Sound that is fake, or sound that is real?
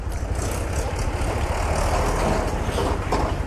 real